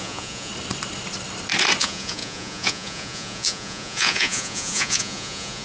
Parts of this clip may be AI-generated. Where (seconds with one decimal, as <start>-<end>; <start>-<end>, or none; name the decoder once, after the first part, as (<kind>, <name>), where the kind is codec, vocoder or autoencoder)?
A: 0.0-0.5 (vocoder, Vocos); 1.8-5.6